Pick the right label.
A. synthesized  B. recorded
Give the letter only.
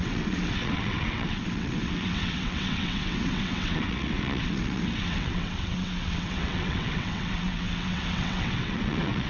A